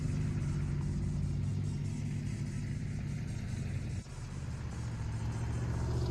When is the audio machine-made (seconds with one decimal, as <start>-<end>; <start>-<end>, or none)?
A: none